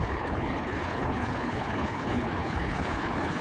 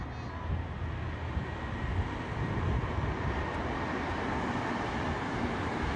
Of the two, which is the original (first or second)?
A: second